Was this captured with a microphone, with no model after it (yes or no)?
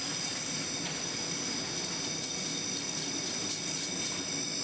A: yes